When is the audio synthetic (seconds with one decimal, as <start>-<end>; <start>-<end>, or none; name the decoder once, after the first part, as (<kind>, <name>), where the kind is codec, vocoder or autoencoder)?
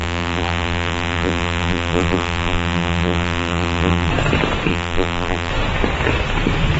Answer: 0.0-4.1 (vocoder, BigVGAN v2); 4.7-5.5